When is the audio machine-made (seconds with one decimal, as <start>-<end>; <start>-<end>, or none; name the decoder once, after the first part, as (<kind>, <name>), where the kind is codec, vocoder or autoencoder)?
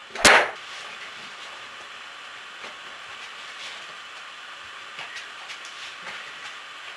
none